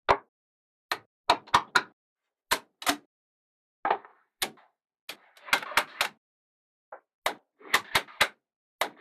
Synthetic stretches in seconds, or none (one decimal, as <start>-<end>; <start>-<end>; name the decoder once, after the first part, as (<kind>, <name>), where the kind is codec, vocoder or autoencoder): none